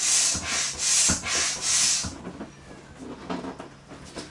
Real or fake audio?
real